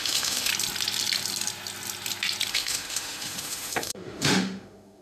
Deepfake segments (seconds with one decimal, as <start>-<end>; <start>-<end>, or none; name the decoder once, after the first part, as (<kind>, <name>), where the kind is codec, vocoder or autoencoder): 0.0-0.5 (autoencoder, DAC-VAE); 2.5-5.0